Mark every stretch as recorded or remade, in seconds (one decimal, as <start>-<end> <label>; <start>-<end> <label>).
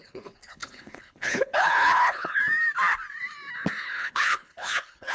0.0-2.4 remade; 2.4-3.8 recorded; 3.8-5.1 remade